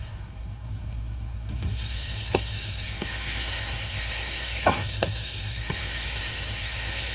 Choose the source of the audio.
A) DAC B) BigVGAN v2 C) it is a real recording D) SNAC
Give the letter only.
D